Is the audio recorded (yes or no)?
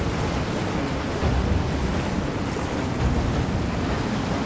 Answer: yes